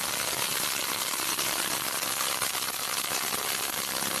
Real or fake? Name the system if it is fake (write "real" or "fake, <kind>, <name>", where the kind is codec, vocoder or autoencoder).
real